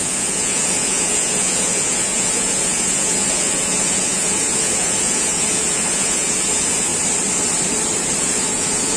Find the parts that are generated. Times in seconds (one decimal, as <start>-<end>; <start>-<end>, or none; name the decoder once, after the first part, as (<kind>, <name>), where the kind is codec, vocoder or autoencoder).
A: 0.0-6.9 (vocoder, Vocos); 8.2-9.0